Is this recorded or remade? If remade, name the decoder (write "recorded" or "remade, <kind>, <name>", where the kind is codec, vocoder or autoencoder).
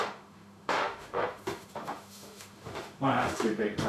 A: remade, autoencoder, DAC-VAE